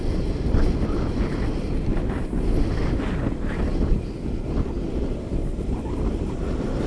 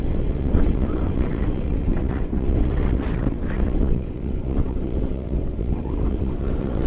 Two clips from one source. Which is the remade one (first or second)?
second